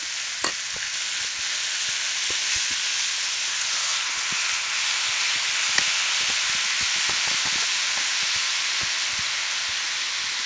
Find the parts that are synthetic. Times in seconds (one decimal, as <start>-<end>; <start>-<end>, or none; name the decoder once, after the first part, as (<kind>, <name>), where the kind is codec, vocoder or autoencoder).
none

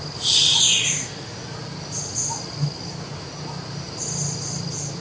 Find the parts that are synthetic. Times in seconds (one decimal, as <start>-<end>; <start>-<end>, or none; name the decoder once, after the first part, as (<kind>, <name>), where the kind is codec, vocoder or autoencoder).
none

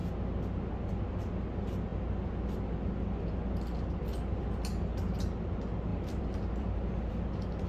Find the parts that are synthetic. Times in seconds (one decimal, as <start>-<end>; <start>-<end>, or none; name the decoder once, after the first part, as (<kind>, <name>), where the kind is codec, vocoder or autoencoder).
5.9-7.1 (vocoder, BigVGAN v2)

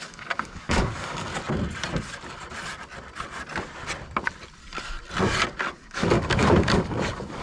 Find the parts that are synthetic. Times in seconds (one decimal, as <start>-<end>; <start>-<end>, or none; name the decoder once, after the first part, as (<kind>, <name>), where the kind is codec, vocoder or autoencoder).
0.0-1.3 (codec, DAC); 5.7-7.4

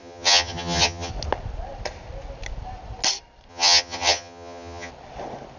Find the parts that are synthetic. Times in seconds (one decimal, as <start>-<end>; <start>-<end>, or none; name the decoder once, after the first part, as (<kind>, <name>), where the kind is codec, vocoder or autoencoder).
0.0-1.1 (vocoder, HiFi-GAN); 3.5-4.9

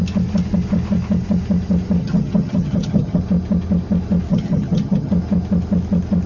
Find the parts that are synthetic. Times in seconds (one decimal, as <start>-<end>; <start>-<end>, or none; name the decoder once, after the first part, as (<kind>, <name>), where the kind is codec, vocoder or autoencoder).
2.0-3.2 (vocoder, HiFi-GAN); 4.3-5.1

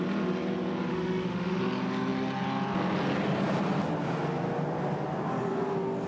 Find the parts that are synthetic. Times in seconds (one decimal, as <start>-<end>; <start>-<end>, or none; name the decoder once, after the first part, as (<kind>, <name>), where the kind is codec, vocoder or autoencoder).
0.9-1.6 (autoencoder, DAC-VAE)

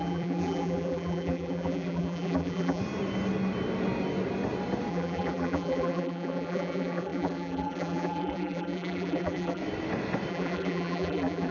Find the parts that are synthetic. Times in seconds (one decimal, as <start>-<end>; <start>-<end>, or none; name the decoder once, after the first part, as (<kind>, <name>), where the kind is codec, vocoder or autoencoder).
0.0-2.8 (vocoder, BigVGAN v2); 4.9-9.6; 10.3-11.5